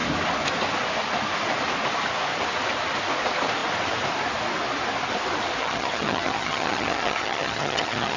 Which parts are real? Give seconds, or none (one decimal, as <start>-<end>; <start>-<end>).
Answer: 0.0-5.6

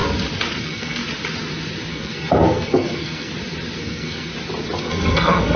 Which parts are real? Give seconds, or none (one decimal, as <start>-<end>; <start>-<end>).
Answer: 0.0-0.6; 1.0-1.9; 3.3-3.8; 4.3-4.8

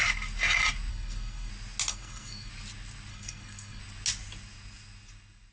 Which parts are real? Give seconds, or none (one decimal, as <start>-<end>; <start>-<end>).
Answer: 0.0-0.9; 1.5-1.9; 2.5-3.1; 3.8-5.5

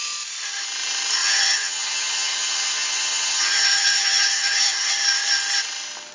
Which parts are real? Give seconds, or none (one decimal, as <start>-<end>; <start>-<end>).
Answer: 0.0-1.2; 4.9-6.1

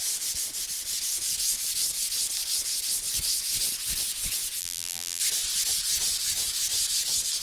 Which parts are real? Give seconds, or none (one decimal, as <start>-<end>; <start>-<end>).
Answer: 0.0-4.6; 5.2-7.4

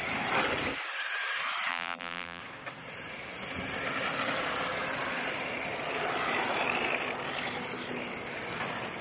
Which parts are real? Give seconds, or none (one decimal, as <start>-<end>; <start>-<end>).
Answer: 0.0-1.7; 2.4-9.0

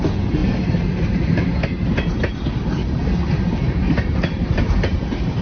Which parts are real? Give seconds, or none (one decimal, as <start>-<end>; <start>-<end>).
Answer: none